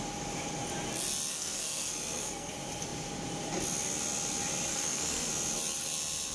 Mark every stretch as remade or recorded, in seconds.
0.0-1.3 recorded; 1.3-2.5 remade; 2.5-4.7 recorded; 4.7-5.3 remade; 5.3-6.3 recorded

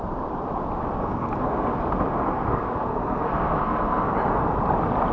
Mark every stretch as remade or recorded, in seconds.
0.0-1.0 recorded; 1.0-4.1 remade; 4.1-5.1 recorded